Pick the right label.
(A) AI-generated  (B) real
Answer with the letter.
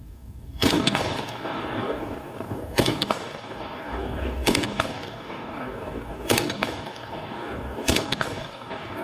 A